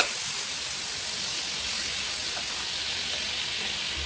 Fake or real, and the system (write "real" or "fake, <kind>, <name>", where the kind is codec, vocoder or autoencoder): real